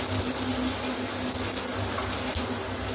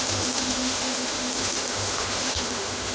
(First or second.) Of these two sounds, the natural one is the first